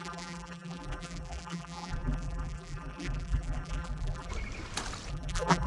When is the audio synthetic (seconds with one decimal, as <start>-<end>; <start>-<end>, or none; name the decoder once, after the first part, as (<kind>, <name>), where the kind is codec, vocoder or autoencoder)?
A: 0.0-4.3 (vocoder, BigVGAN v2); 5.1-5.7